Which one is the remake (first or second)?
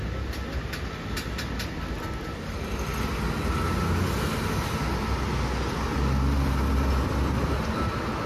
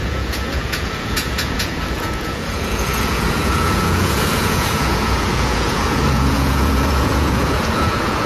second